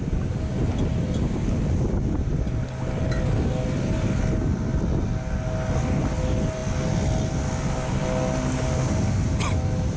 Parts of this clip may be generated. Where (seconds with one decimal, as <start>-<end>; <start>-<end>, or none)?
none